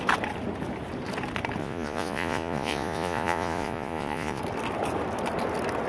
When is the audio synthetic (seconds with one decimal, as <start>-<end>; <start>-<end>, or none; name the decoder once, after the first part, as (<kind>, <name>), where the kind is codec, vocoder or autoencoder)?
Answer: 1.6-4.4 (vocoder, Vocos)